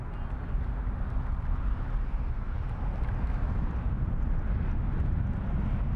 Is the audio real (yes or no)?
yes